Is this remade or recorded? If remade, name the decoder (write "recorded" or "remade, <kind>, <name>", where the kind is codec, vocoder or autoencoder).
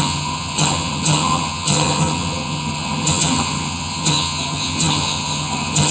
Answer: remade, vocoder, HiFi-GAN